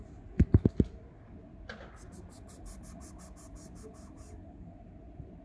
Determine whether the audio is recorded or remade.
recorded